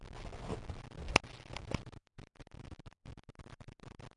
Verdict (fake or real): real